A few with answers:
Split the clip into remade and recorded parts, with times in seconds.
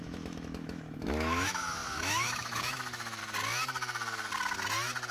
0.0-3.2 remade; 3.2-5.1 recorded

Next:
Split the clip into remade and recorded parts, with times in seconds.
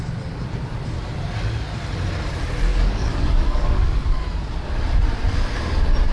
0.0-2.7 recorded; 2.7-4.2 remade; 4.2-6.1 recorded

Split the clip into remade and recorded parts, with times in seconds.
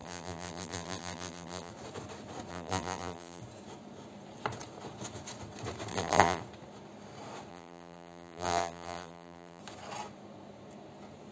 0.0-1.7 remade; 1.7-2.5 recorded; 2.5-3.4 remade; 3.4-5.9 recorded; 5.9-6.4 remade; 6.4-7.5 recorded; 7.5-9.6 remade; 9.6-11.3 recorded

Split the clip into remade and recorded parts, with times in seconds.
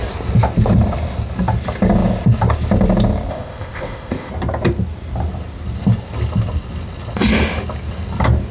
0.0-3.3 recorded; 3.3-4.3 remade; 4.3-8.5 recorded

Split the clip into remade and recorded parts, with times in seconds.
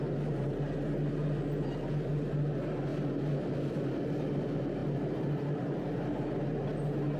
0.0-7.2 recorded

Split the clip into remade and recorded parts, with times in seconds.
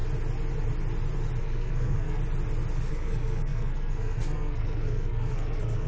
0.0-1.4 recorded; 1.4-2.2 remade; 2.2-2.9 recorded; 2.9-5.9 remade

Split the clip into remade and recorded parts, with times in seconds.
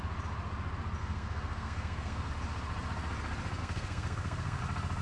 0.0-1.0 recorded; 1.0-2.3 remade; 2.3-3.6 recorded; 3.6-4.6 remade; 4.6-5.0 recorded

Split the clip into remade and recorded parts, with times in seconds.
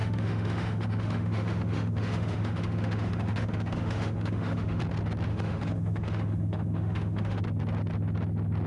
0.0-4.8 remade; 4.8-5.3 recorded; 5.3-7.4 remade; 7.4-8.7 recorded